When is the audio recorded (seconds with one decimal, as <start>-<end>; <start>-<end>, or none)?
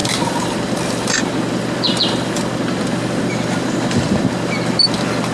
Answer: 0.0-5.3